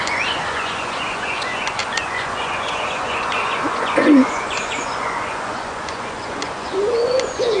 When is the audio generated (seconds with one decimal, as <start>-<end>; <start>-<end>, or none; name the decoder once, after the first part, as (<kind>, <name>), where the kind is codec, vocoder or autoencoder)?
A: 0.0-7.6 (vocoder, Vocos)